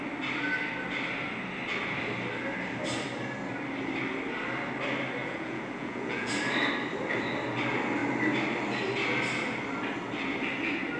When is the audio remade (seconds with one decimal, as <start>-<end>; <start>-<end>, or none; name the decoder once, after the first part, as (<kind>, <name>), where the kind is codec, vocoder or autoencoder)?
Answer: 5.2-6.3 (vocoder, Vocos)